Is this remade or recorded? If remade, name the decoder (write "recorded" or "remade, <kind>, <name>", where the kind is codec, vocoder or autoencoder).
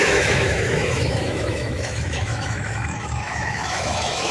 remade, autoencoder, DAC-VAE